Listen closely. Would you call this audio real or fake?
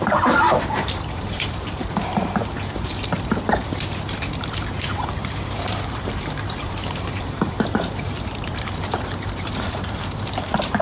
fake